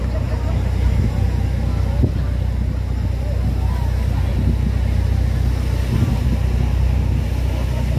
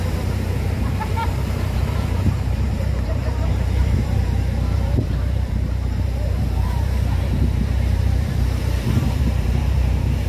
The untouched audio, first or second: first